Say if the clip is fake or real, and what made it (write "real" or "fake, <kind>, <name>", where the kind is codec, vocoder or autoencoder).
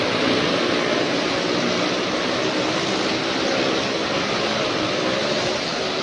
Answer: real